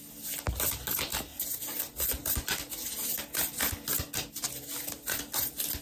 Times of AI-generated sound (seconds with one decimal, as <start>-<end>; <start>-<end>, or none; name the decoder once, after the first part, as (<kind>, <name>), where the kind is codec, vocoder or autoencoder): none